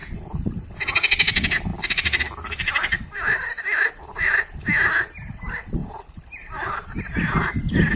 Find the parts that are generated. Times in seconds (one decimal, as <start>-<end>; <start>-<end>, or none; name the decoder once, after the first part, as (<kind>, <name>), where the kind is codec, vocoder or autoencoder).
0.0-0.7 (vocoder, BigVGAN v2); 1.7-4.6; 5.8-7.0